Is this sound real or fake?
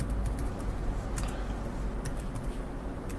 real